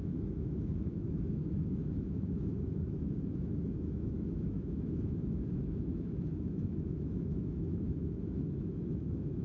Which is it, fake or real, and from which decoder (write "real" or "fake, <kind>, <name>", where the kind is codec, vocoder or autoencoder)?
fake, autoencoder, DAC-VAE